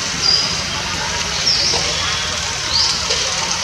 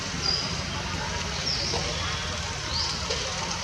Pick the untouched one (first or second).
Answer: first